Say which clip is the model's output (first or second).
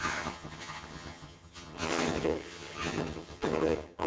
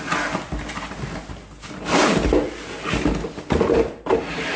first